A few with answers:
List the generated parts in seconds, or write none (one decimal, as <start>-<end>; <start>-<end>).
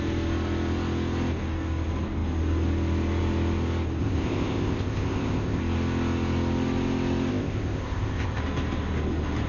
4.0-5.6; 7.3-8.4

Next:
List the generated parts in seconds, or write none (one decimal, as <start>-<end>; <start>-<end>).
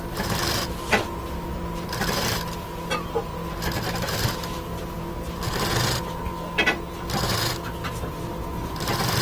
none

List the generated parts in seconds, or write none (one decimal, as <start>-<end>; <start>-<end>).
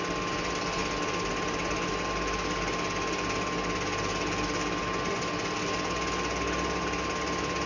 none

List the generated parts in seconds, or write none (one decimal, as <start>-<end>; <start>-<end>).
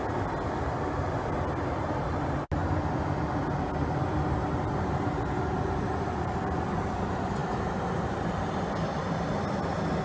8.9-10.0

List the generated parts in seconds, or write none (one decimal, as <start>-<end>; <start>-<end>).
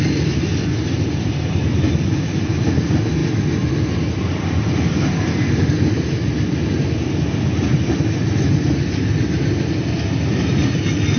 none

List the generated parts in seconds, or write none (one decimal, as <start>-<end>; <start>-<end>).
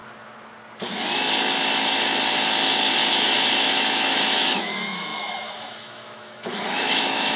3.1-7.4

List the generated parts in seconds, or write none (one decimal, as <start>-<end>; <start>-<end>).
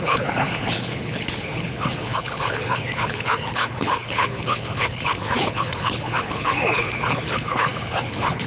0.0-8.5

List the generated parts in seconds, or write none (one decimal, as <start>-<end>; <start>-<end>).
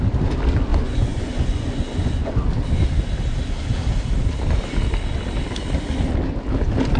0.7-2.3